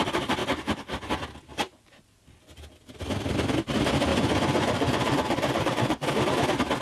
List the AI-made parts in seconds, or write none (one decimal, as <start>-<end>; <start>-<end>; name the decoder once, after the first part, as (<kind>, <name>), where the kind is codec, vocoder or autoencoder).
1.5-2.2 (vocoder, Vocos); 4.1-6.1